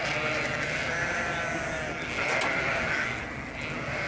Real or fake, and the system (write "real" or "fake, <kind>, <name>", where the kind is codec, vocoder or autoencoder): real